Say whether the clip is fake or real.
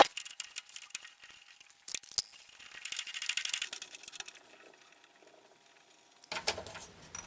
real